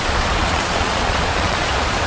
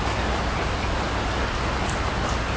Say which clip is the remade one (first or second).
first